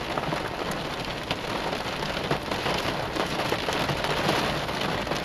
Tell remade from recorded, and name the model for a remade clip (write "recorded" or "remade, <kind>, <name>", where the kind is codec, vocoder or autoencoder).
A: recorded